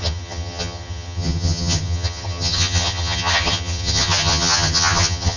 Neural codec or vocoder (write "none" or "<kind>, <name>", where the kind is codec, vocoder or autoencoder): vocoder, HiFi-GAN